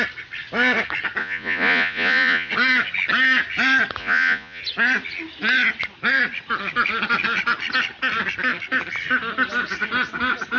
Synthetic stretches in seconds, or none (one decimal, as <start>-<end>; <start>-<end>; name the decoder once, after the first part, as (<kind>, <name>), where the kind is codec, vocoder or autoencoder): 1.2-2.5 (vocoder, Vocos); 4.0-4.6